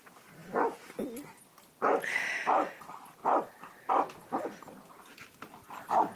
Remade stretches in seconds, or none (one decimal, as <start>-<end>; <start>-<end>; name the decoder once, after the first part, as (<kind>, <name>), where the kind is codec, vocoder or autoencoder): 0.0-6.2 (vocoder, BigVGAN v2)